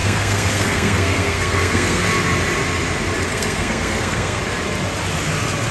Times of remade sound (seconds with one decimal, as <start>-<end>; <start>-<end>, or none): 0.0-2.0; 3.3-4.4